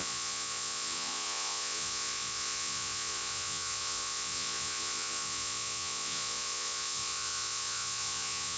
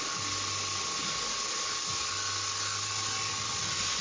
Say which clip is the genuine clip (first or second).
second